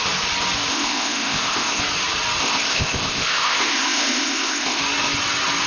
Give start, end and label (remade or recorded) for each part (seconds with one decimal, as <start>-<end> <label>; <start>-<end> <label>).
0.0-0.7 recorded; 0.7-1.8 remade; 1.8-2.4 recorded; 2.4-4.8 remade; 4.8-5.7 recorded

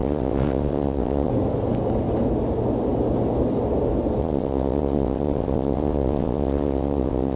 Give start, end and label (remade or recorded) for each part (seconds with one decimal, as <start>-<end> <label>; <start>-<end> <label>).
0.0-1.3 remade; 1.3-4.2 recorded; 4.2-7.4 remade

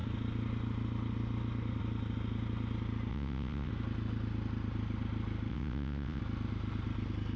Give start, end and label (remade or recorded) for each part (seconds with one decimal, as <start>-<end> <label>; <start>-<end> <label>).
0.0-3.1 recorded; 3.1-3.7 remade; 3.7-5.5 recorded; 5.5-6.2 remade; 6.2-7.4 recorded

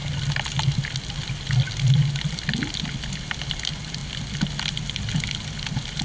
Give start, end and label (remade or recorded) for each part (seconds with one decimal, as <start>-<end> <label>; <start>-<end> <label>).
0.0-6.0 recorded

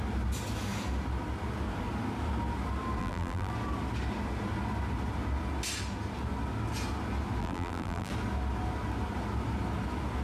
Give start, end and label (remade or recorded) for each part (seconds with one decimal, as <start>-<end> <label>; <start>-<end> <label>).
0.0-3.0 recorded; 3.0-3.5 remade; 3.5-7.4 recorded; 7.4-8.1 remade; 8.1-10.2 recorded